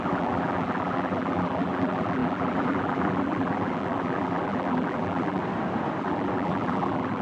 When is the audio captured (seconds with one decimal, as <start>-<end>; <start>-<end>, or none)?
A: 5.4-6.0